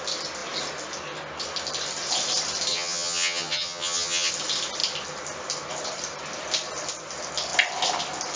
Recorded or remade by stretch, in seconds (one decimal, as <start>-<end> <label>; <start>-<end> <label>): 0.0-2.7 recorded; 2.7-4.3 remade; 4.3-8.4 recorded